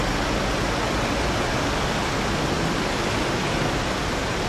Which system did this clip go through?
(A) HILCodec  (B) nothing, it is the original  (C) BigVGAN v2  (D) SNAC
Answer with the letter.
B